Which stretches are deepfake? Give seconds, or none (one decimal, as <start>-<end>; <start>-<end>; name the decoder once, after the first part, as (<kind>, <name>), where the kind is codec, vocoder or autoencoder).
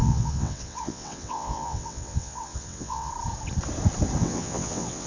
0.0-3.1 (vocoder, WaveNeXt); 4.2-5.1